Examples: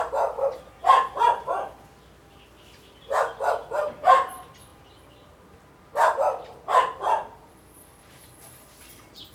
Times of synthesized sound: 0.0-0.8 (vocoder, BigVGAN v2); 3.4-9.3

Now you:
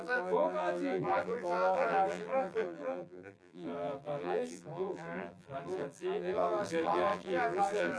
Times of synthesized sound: 0.0-8.0 (vocoder, BigVGAN v2)

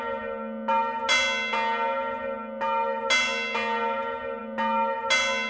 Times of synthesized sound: none

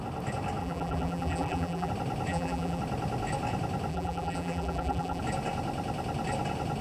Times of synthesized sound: 0.6-1.9 (vocoder, BigVGAN v2); 2.3-2.8; 3.9-5.2